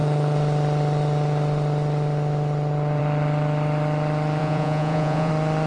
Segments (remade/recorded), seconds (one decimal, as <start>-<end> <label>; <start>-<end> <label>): 0.0-4.4 recorded; 4.4-5.3 remade; 5.3-5.7 recorded